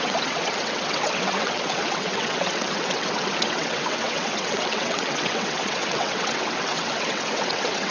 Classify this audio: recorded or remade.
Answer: remade